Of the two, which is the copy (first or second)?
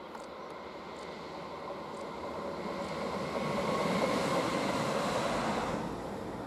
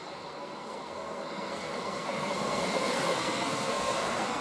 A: second